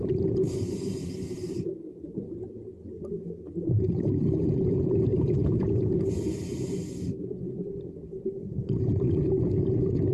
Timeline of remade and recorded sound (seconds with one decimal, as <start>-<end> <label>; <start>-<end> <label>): 0.0-10.1 recorded